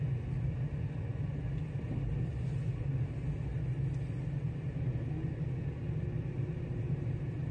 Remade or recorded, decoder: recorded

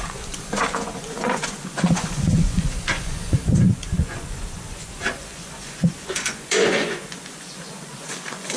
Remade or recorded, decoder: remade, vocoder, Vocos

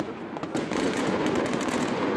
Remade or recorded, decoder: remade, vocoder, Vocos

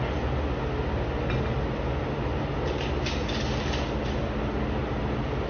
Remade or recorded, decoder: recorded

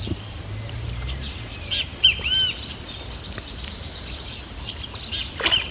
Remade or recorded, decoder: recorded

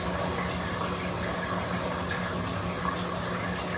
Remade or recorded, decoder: recorded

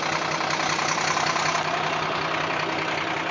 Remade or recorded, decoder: recorded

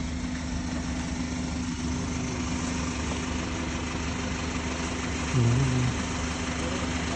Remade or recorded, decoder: recorded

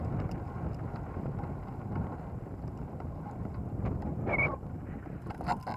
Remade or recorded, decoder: recorded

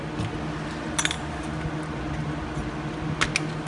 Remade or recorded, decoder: recorded